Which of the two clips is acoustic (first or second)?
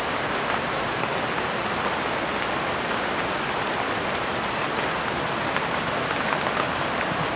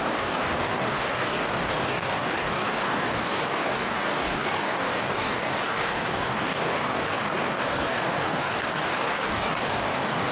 first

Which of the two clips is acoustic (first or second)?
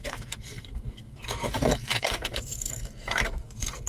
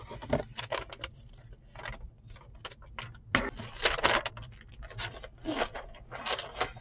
second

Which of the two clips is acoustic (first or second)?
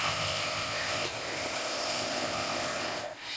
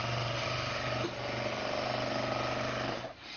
second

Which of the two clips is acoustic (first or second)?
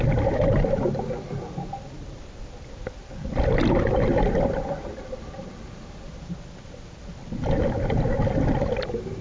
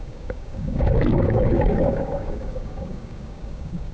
first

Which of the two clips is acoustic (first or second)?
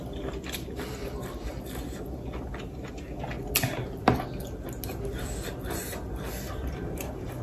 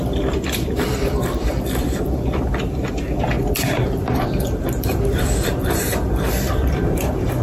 first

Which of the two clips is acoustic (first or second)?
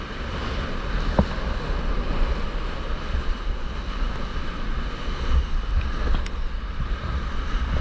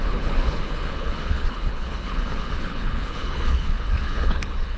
first